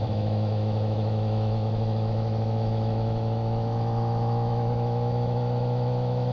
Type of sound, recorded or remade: remade